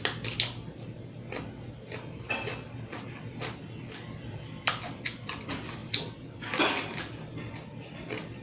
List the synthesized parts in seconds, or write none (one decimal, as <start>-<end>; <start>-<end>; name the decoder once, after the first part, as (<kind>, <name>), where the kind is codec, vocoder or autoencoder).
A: none